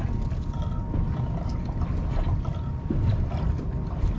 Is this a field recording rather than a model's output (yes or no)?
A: yes